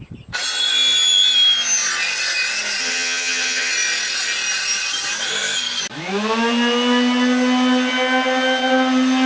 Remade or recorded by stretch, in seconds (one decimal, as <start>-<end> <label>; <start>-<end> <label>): 0.0-2.8 recorded; 2.8-3.7 remade; 3.7-9.3 recorded